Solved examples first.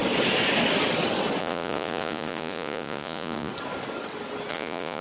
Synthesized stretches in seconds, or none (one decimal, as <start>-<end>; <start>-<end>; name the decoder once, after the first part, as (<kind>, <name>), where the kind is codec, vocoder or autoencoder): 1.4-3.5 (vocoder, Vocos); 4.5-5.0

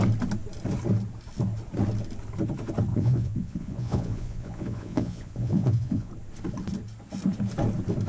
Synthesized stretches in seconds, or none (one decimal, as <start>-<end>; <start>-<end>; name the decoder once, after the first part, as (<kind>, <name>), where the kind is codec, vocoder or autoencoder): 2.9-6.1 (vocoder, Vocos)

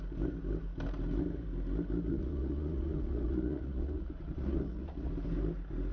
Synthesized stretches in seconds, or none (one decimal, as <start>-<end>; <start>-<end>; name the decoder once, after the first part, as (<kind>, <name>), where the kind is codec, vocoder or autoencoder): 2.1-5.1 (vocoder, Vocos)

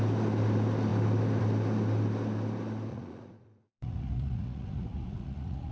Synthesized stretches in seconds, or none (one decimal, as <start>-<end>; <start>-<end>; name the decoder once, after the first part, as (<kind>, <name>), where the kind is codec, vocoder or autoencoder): 2.9-5.7 (vocoder, Vocos)

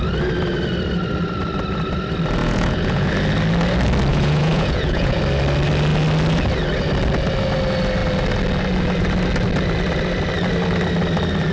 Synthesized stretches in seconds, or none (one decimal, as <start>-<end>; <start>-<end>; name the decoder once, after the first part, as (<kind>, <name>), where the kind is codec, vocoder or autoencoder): 2.4-3.1 (vocoder, Vocos); 4.1-5.2

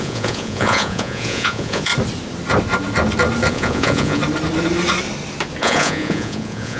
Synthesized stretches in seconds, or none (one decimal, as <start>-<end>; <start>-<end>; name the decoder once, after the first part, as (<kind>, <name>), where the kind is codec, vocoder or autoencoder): 0.0-1.9 (vocoder, Vocos); 3.5-4.2; 5.6-6.8